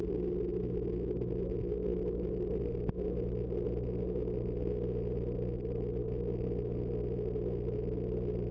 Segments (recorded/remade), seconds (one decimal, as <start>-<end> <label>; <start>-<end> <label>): 0.0-1.9 recorded; 1.9-2.6 remade; 2.6-8.5 recorded